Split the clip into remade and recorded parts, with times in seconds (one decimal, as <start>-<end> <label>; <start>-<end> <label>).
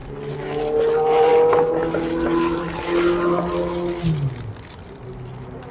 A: 0.0-5.7 recorded